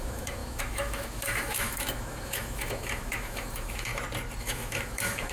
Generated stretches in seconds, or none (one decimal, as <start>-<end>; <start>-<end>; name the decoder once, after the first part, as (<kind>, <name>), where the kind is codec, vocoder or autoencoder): 0.0-3.9 (autoencoder, DAC-VAE); 4.4-5.3